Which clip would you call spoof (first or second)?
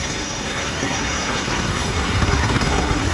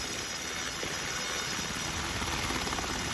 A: first